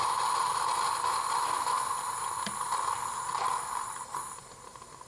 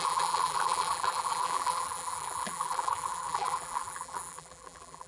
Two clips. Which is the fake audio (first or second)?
second